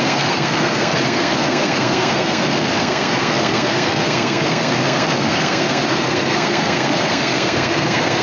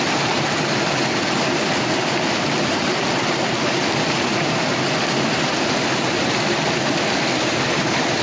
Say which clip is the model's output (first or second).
first